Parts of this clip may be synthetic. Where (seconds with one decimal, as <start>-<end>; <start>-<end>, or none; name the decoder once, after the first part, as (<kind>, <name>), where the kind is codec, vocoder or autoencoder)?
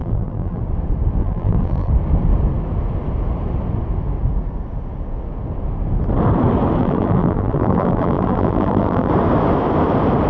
0.0-0.6 (vocoder, BigVGAN v2); 1.2-1.9; 6.8-9.1